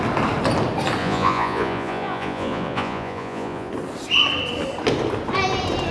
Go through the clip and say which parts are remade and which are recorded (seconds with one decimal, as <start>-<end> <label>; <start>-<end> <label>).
0.0-1.0 recorded; 1.0-3.7 remade; 3.7-5.9 recorded